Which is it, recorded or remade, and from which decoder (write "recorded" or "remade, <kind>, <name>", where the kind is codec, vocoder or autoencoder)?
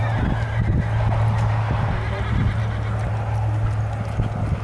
recorded